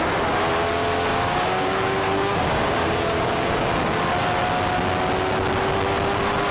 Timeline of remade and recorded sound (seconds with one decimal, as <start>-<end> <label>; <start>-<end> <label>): 0.0-1.1 recorded; 1.1-4.0 remade; 4.0-6.5 recorded